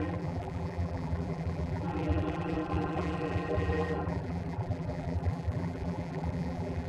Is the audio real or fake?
fake